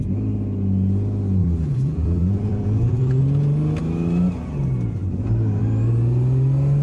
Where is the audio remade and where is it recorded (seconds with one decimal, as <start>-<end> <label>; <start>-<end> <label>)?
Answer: 0.0-1.4 recorded; 1.4-3.2 remade; 3.2-6.8 recorded